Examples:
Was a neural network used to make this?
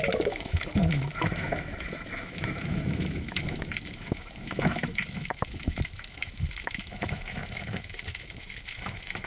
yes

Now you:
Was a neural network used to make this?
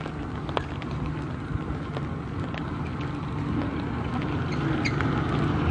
no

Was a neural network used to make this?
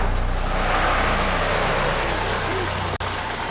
no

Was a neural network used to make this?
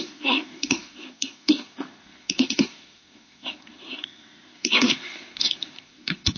yes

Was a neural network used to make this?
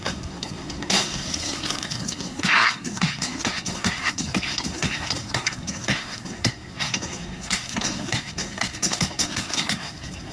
yes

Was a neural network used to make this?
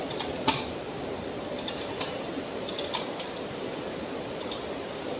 no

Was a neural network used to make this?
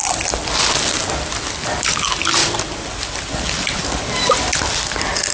no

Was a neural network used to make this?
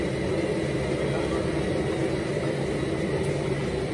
no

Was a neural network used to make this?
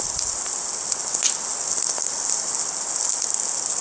no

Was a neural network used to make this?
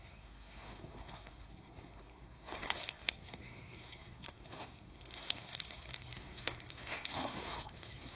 yes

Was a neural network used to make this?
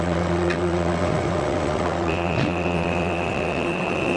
yes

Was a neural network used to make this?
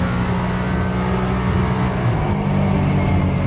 no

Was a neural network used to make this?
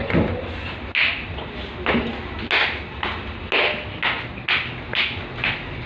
no